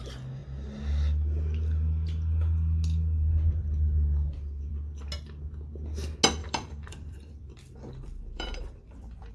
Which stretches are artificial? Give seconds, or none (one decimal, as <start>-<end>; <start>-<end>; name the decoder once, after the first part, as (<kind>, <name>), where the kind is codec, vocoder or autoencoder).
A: 6.4-9.3 (vocoder, BigVGAN v2)